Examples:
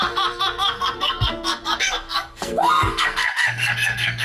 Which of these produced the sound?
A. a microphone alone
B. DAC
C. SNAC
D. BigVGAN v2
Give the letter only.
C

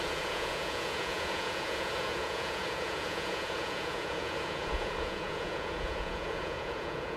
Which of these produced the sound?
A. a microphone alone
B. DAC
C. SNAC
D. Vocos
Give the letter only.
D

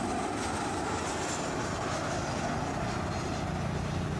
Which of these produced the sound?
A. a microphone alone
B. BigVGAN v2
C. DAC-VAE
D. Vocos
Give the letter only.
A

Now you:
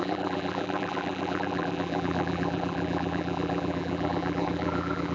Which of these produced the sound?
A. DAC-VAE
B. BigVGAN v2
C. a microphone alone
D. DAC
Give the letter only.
B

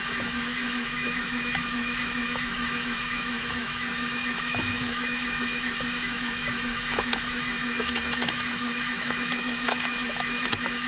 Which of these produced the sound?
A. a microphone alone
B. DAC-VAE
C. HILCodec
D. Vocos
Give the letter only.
B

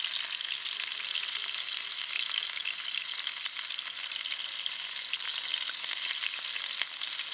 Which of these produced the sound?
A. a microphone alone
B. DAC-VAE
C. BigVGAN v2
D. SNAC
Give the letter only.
A